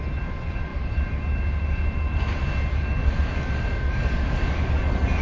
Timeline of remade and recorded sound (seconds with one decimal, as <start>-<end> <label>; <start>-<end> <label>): 0.0-0.7 recorded; 0.7-2.4 remade; 2.4-5.2 recorded